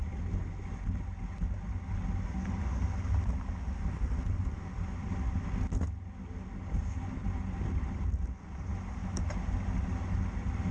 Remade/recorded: recorded